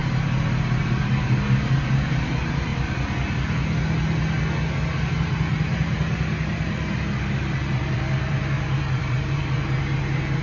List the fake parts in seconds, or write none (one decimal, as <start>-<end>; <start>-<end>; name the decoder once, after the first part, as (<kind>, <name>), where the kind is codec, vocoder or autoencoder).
0.0-2.7 (vocoder, BigVGAN v2); 5.1-10.4